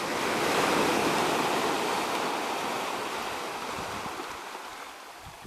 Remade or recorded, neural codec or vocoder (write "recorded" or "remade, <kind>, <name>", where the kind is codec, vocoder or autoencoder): recorded